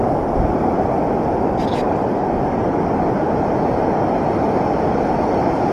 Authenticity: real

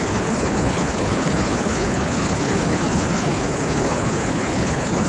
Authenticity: fake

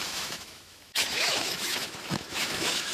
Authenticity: fake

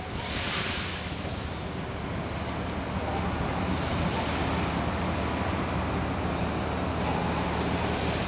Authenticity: real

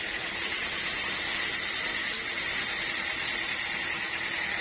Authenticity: real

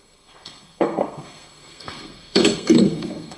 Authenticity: fake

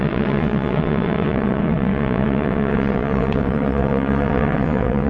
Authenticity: fake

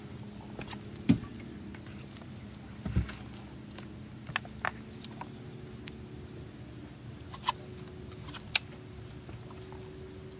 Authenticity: real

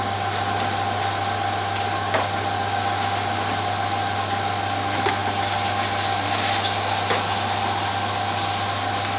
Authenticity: real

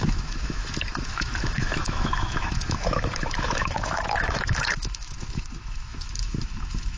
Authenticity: fake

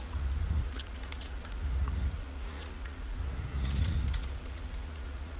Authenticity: fake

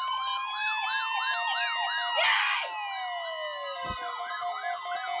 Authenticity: real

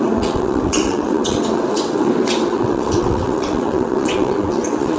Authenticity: fake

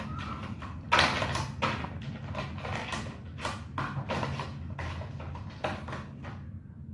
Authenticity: real